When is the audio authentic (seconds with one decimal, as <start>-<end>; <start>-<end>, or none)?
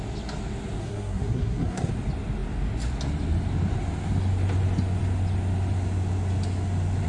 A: 0.0-0.8; 1.9-7.1